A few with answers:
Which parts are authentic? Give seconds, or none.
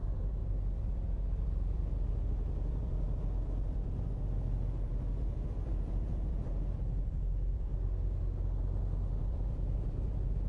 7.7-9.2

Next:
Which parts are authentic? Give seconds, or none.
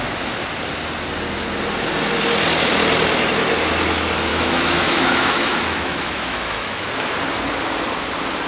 0.0-4.3; 6.9-8.5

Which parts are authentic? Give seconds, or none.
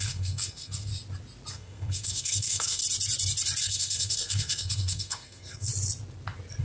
0.9-1.5; 2.8-3.6; 5.7-6.6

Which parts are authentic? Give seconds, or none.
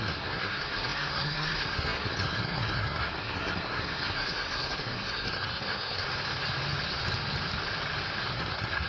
6.0-8.3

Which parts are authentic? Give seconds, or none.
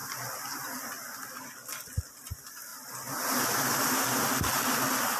0.0-5.2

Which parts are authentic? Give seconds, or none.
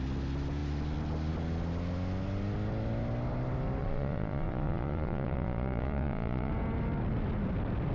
0.0-3.8; 6.5-7.9